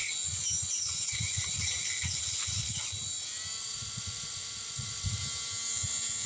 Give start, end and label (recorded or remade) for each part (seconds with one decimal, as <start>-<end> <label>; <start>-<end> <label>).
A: 0.0-3.6 recorded; 3.6-5.2 remade; 5.2-6.3 recorded